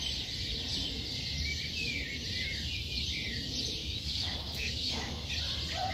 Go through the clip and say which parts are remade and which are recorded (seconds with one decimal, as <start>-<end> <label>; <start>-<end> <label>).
0.0-3.8 recorded; 3.8-5.3 remade; 5.3-5.9 recorded